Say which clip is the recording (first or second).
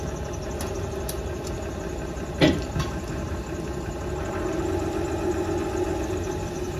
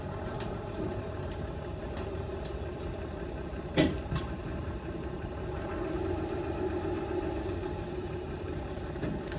first